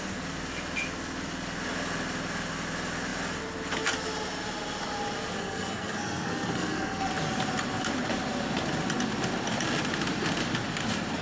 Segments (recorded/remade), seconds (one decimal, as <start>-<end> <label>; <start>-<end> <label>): 0.0-5.4 recorded; 5.4-7.1 remade; 7.1-11.2 recorded